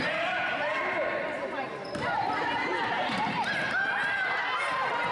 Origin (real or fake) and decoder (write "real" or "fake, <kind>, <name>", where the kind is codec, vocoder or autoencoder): fake, vocoder, BigVGAN v2